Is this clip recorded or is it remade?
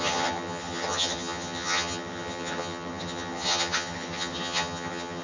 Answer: remade